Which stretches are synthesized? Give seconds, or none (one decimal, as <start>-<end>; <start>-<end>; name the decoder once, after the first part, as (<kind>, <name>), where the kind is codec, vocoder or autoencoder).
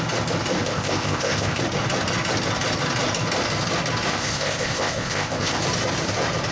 0.6-1.6 (codec, ZipCodec); 4.1-5.6